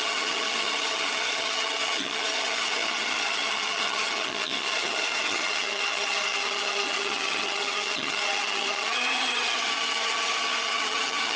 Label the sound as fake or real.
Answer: fake